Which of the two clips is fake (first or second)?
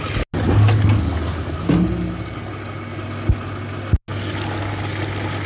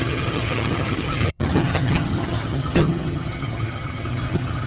second